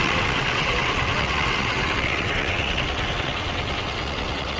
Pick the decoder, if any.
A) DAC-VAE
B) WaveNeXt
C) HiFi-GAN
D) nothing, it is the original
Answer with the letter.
B